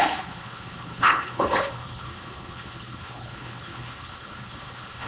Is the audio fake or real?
fake